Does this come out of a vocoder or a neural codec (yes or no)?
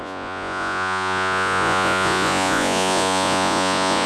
yes